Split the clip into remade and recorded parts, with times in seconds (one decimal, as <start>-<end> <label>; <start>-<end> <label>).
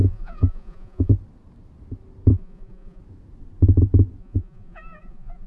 0.0-1.1 remade; 1.1-2.3 recorded; 2.3-3.0 remade; 3.0-4.2 recorded; 4.2-5.5 remade